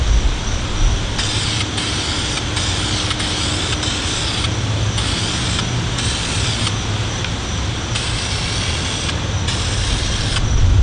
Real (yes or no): yes